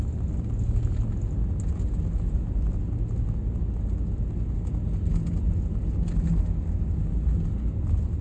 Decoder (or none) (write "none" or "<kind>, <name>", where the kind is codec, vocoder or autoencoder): none